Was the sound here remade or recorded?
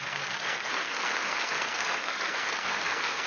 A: remade